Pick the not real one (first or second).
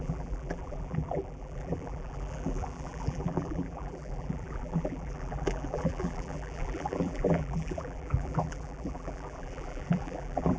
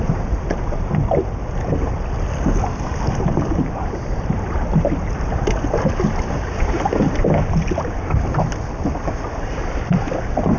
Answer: first